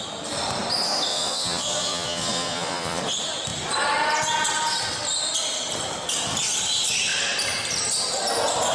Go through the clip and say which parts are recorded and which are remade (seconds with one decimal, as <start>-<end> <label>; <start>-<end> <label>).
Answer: 0.0-1.1 recorded; 1.1-3.0 remade; 3.0-8.7 recorded